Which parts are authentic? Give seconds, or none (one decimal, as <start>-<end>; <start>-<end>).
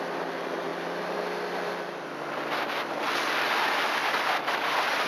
0.0-5.1